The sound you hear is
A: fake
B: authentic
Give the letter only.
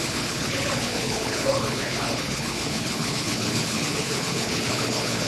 A